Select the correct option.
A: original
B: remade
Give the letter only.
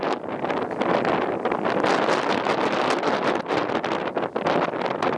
A